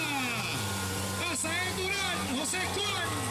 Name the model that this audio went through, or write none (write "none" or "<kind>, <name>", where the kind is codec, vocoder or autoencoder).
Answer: none